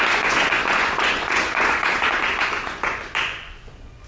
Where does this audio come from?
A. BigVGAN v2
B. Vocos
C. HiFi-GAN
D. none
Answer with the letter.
B